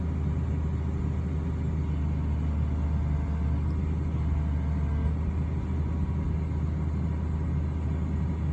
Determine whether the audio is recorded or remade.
recorded